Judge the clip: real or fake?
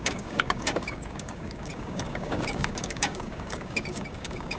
fake